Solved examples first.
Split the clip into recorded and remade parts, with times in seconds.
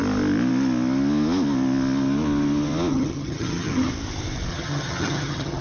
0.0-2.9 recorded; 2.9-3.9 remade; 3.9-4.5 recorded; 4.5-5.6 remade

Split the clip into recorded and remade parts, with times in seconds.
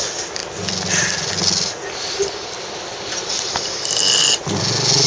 0.0-5.1 recorded